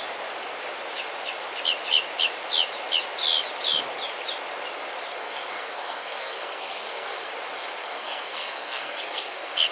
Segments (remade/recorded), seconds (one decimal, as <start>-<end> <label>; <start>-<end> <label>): 0.0-5.2 recorded; 5.2-7.3 remade; 7.3-7.8 recorded; 7.8-9.7 remade